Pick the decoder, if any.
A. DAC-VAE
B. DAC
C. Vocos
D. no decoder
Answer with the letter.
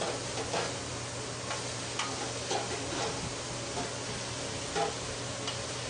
D